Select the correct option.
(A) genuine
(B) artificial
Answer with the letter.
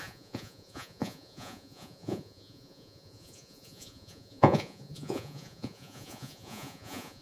B